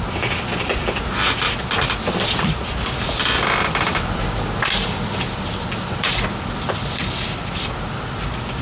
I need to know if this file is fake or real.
real